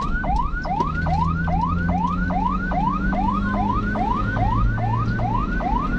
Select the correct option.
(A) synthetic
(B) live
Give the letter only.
B